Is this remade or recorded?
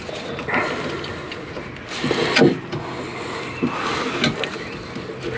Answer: recorded